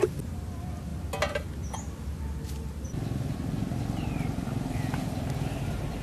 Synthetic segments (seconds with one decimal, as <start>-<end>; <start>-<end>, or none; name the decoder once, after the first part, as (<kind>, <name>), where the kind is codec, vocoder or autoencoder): none